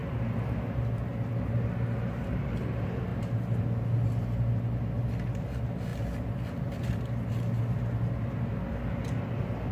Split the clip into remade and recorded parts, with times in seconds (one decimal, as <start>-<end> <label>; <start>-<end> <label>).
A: 0.0-9.7 recorded